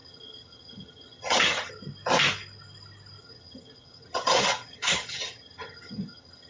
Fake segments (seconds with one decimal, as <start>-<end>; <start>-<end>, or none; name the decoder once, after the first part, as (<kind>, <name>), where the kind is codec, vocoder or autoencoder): 0.0-1.7 (vocoder, HiFi-GAN); 3.2-6.5